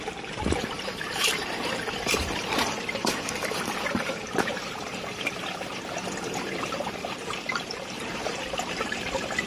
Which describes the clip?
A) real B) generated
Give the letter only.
B